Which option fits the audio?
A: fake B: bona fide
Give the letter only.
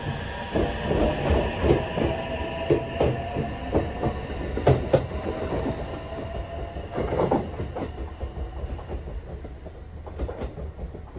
B